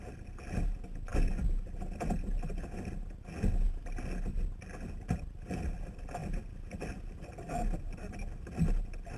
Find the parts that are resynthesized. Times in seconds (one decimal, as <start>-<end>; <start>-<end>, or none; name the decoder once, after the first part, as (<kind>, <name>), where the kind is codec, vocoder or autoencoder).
none